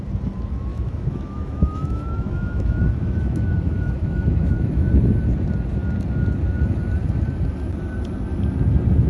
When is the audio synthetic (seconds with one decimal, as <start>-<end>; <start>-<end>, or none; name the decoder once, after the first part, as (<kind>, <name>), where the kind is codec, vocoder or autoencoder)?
0.7-4.9 (autoencoder, DAC-VAE)